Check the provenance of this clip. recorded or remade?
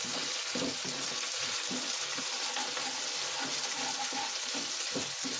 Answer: recorded